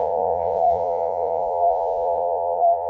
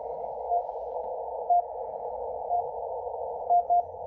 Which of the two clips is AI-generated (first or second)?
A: first